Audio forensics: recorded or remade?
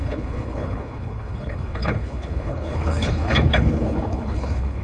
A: remade